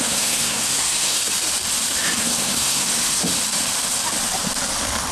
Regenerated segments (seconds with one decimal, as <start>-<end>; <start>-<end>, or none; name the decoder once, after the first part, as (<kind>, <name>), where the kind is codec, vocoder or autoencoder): 0.0-1.2 (codec, SNAC); 2.2-3.2